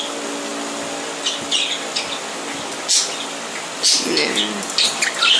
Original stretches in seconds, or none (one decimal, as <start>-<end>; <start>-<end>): 0.0-5.4